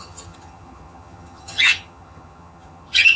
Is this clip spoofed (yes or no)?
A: yes